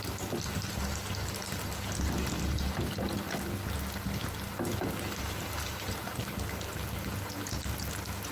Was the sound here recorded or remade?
recorded